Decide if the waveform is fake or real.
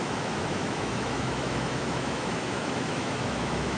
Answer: fake